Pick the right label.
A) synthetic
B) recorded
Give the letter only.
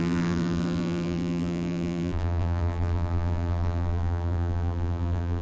A